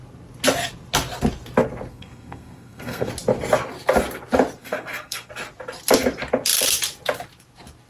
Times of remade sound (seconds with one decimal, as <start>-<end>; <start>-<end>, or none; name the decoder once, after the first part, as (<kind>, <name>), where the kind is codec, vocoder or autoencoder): 1.9-3.1 (codec, SNAC); 4.6-5.3

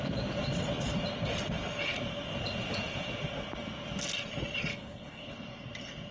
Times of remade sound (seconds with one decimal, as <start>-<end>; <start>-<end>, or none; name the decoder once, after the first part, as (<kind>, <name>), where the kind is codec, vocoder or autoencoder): 4.7-5.3 (codec, HILCodec)